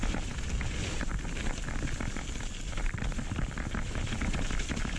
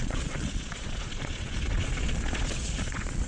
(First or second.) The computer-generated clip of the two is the second